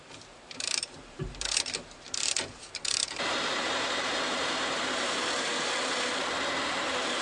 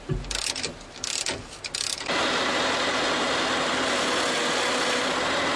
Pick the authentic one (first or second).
second